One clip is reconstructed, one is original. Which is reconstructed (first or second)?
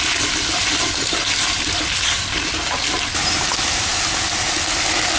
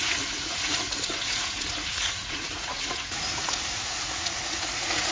second